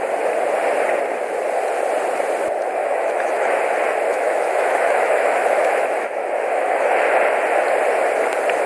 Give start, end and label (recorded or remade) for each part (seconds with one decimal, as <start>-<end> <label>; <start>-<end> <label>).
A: 0.0-2.8 recorded; 2.8-3.6 remade; 3.6-4.1 recorded; 4.1-7.1 remade; 7.1-8.7 recorded